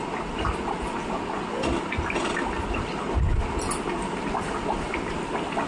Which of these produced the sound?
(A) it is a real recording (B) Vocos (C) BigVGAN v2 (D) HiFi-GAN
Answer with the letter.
A